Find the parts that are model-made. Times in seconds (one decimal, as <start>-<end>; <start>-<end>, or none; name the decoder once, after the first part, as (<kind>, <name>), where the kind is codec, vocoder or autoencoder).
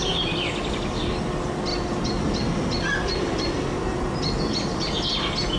none